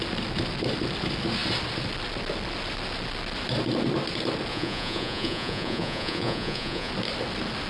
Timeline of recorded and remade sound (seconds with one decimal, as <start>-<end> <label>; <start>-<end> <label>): 0.0-4.5 recorded; 4.5-6.9 remade; 6.9-7.7 recorded